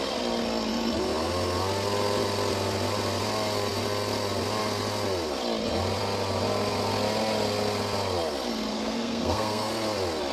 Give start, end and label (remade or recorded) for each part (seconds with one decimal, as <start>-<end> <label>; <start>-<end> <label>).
0.0-8.7 recorded; 8.7-9.7 remade; 9.7-10.3 recorded